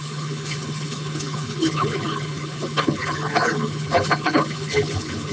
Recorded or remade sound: remade